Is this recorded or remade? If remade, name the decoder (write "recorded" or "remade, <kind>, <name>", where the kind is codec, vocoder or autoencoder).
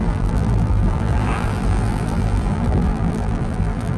remade, vocoder, BigVGAN v2